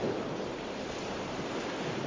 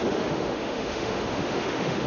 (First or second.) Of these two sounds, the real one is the first